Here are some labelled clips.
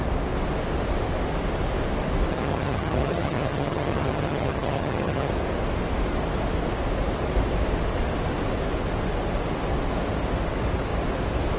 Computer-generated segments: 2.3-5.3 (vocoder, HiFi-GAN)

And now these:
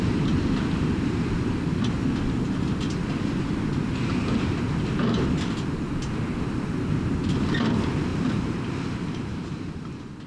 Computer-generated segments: 8.1-9.7 (vocoder, BigVGAN v2)

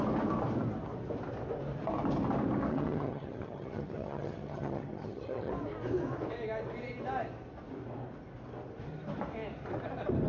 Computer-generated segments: 2.7-5.5 (vocoder, HiFi-GAN)

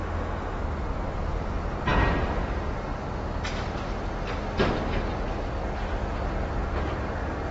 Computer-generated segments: 0.0-0.6 (autoencoder, DAC-VAE)

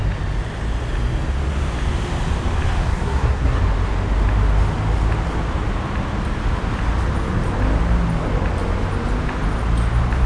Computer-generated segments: 2.9-3.6 (codec, SNAC)

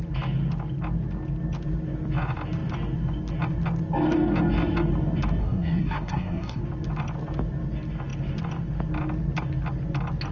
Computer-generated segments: 5.4-6.6 (codec, SNAC)

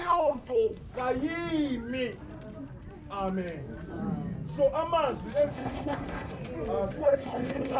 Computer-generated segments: 0.0-0.8 (codec, SNAC); 5.5-6.4; 7.0-7.8